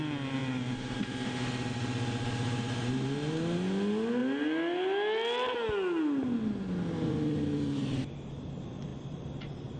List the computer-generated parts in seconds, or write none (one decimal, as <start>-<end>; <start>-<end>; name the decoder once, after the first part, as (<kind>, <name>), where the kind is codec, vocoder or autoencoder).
none